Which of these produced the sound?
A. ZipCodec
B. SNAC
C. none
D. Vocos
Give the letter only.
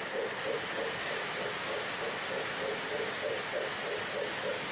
C